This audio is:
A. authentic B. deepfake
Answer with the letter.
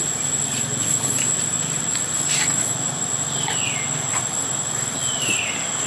A